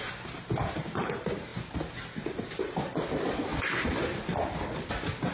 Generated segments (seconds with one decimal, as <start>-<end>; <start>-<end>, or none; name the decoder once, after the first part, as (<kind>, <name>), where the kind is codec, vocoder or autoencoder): 0.0-1.5 (vocoder, BigVGAN v2); 3.1-3.5; 4.0-5.3